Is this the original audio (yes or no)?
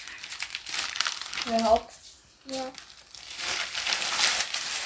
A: yes